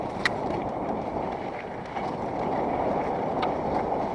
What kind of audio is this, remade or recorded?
recorded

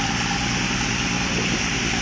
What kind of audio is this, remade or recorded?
recorded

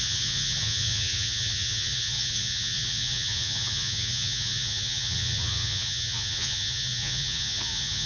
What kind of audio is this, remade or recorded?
remade